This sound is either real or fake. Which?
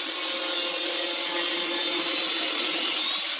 real